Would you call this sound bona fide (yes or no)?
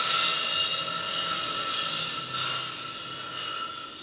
yes